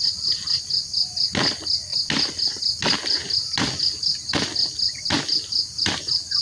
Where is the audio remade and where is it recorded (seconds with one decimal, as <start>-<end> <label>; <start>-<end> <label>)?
0.0-6.4 recorded